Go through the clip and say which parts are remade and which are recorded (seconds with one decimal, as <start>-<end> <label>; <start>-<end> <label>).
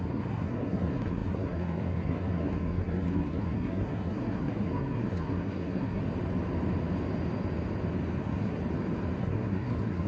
0.0-6.0 remade; 6.0-8.2 recorded; 8.2-8.6 remade; 8.6-9.2 recorded; 9.2-10.1 remade